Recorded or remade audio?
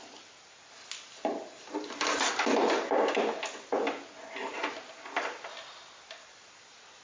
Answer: recorded